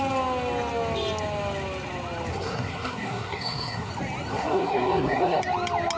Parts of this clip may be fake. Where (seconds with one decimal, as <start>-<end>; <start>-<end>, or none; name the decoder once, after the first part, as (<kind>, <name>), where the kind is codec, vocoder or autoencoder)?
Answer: 2.3-3.9 (codec, SNAC); 4.3-5.4